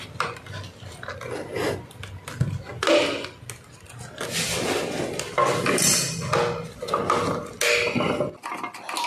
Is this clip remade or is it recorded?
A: recorded